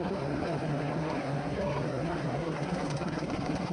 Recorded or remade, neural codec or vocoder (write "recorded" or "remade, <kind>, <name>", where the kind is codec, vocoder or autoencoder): remade, codec, SNAC